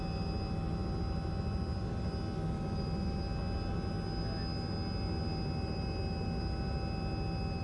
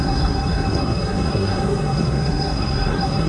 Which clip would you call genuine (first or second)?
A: first